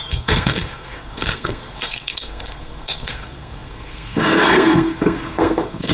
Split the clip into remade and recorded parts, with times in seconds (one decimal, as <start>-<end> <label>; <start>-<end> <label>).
0.0-5.9 remade